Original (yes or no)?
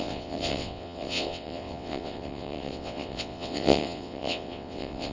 no